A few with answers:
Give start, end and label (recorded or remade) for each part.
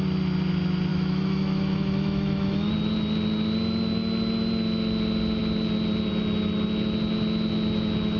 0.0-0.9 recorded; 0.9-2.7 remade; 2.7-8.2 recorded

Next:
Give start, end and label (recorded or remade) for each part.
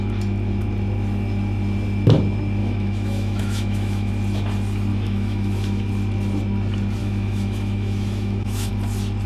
0.0-2.6 recorded; 2.6-4.1 remade; 4.1-4.9 recorded; 4.9-5.9 remade; 5.9-7.0 recorded; 7.0-8.7 remade; 8.7-9.3 recorded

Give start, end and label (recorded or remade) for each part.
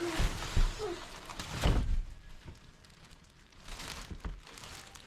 0.0-1.3 recorded; 1.3-4.2 remade; 4.2-5.1 recorded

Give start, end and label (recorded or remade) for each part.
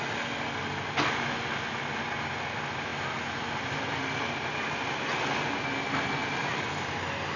0.0-7.4 recorded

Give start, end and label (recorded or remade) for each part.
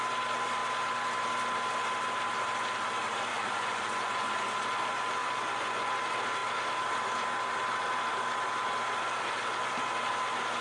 0.0-3.3 recorded; 3.3-4.3 remade; 4.3-5.2 recorded; 5.2-5.9 remade; 5.9-10.6 recorded